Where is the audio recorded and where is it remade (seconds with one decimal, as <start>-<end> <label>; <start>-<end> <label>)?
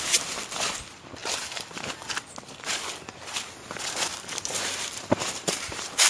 0.0-1.2 recorded; 1.2-2.1 remade; 2.1-4.1 recorded; 4.1-6.1 remade